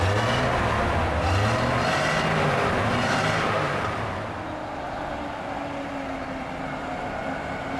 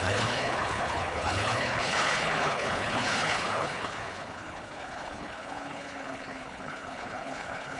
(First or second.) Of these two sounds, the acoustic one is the first